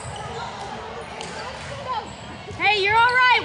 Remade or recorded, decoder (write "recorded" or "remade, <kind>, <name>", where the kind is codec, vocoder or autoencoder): recorded